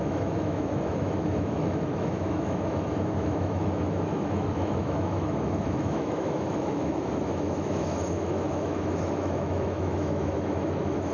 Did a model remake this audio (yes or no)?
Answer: yes